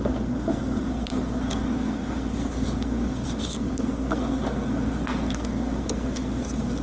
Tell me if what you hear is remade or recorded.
remade